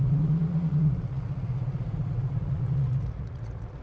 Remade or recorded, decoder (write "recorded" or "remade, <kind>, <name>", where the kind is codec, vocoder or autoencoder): remade, vocoder, Vocos